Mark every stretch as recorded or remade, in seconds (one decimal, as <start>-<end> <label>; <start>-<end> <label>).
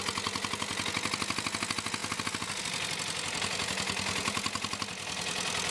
0.0-5.7 recorded